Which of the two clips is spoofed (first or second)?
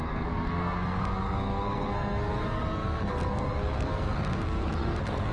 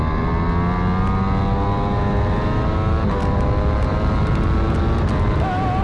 first